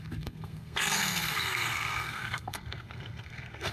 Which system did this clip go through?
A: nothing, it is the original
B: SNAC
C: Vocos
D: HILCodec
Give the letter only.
B